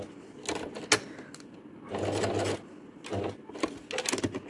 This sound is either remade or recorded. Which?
recorded